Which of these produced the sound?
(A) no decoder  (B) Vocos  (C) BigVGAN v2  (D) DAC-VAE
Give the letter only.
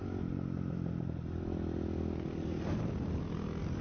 A